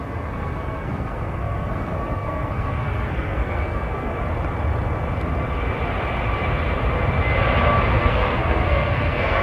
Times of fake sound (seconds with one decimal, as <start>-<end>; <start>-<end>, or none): 0.0-4.1; 8.0-9.4